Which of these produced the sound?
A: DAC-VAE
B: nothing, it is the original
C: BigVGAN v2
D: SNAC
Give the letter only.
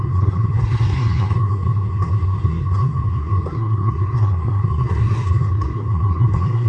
D